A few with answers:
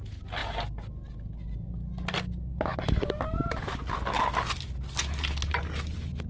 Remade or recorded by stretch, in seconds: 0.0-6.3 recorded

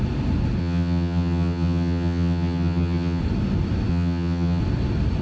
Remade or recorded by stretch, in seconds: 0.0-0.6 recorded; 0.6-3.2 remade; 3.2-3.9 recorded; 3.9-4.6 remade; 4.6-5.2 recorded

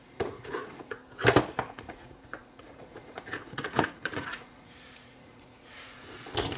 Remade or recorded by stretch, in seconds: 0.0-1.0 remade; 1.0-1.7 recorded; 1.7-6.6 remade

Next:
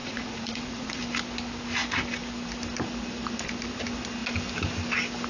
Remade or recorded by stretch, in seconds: 0.0-1.0 remade; 1.0-5.3 recorded

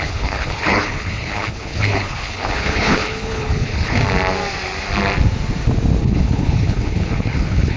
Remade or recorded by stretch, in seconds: 0.0-4.0 remade; 4.0-6.0 recorded; 6.0-7.8 remade

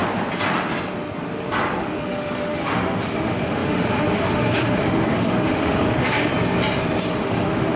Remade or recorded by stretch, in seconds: 0.0-1.8 recorded; 1.8-6.3 remade; 6.3-7.1 recorded; 7.1-7.8 remade